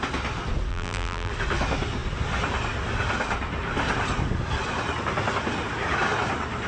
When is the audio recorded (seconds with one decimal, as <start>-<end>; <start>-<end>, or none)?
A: 0.0-0.7; 1.3-6.7